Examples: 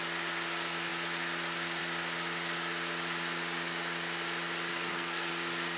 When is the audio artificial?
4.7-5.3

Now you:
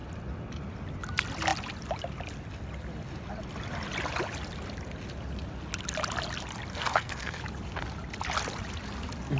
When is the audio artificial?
6.7-7.4

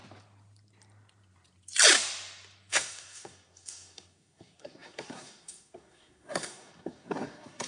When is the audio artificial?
2.7-7.7

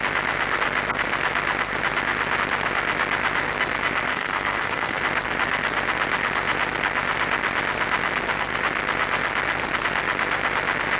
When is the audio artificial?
4.1-5.0

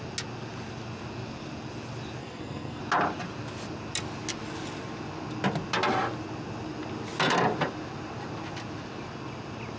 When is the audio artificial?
2.2-2.8